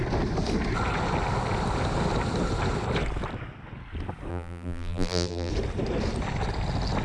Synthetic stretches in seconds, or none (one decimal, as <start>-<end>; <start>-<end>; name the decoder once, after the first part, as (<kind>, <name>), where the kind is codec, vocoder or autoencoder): 4.3-5.5 (vocoder, BigVGAN v2)